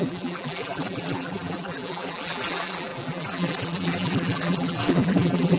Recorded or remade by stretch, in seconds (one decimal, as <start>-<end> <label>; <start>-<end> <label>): 0.0-5.6 remade